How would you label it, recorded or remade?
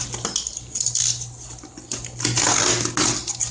recorded